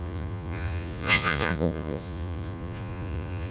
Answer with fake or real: fake